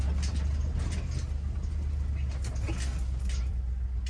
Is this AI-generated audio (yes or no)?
no